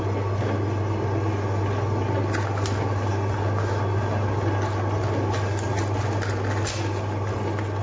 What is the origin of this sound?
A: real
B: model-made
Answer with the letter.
A